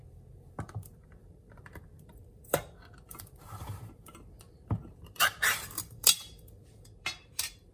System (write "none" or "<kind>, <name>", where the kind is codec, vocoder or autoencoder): vocoder, BigVGAN v2